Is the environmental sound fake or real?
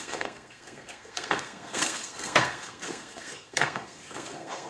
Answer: fake